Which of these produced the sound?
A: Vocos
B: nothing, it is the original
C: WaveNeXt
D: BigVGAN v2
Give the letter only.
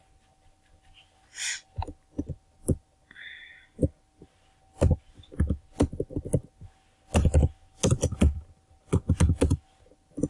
B